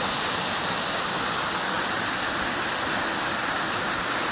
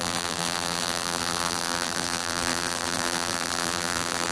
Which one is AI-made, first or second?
second